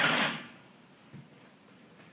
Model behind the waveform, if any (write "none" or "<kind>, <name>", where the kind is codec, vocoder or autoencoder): none